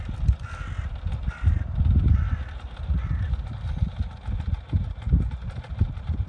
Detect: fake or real real